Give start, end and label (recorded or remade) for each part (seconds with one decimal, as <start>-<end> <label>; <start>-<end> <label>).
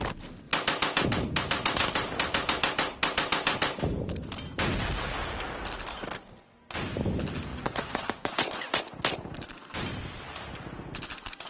0.0-7.5 recorded; 7.5-8.8 remade; 8.8-11.5 recorded